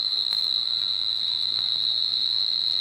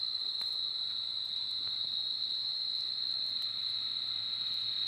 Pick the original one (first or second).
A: second